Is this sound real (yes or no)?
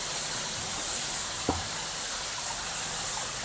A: yes